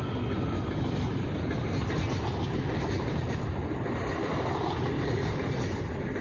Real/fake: real